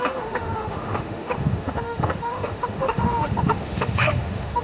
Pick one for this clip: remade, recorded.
remade